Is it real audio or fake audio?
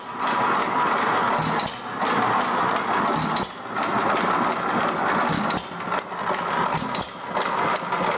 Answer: real